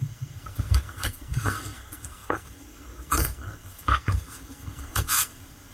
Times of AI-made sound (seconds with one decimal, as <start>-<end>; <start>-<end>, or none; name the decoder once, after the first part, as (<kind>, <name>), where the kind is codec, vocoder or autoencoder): 0.0-5.7 (codec, SNAC)